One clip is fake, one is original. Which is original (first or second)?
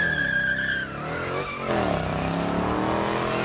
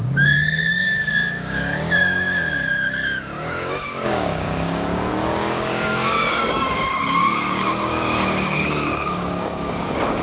first